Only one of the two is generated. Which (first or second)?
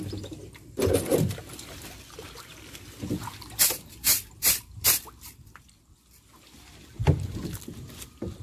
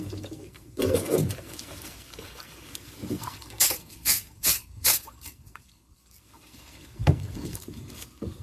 second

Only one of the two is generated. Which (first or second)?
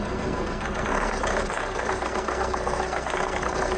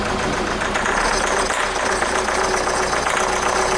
first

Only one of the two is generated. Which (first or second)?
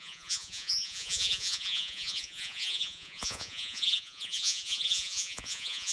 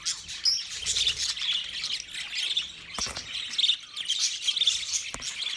first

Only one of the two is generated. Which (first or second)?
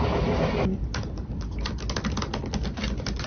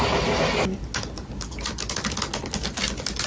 first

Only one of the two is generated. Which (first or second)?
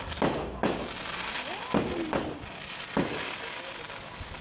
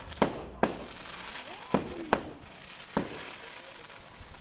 second